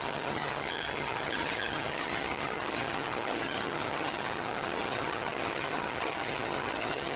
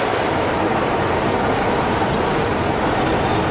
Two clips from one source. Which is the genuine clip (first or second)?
second